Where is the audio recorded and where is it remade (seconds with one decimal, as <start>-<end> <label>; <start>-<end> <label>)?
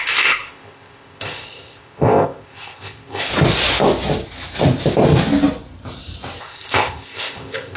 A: 0.0-3.3 remade; 3.3-6.4 recorded; 6.4-7.8 remade